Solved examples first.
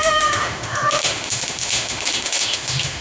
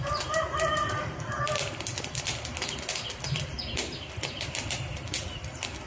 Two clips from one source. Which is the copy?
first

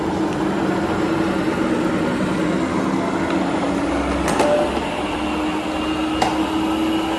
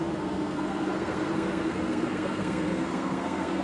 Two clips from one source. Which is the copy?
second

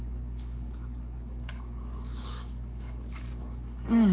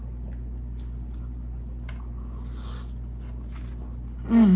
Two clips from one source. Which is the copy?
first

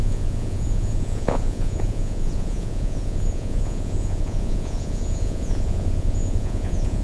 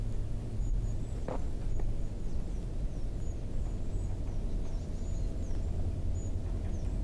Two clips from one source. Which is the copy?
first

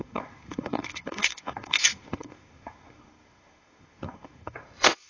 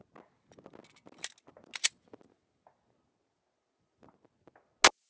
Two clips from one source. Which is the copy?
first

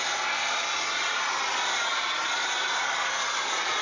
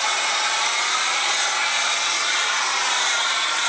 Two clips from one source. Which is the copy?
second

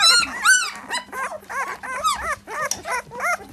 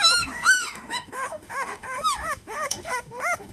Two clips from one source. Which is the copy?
second